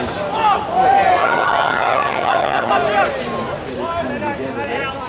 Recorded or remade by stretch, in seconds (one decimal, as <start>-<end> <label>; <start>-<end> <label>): 0.0-1.2 recorded; 1.2-2.7 remade; 2.7-5.1 recorded